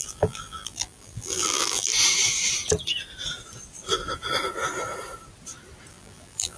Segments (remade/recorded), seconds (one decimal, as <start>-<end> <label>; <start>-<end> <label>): 0.0-1.9 remade; 1.9-5.9 recorded; 5.9-6.6 remade